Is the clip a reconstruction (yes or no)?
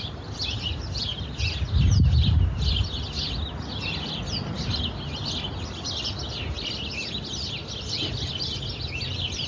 no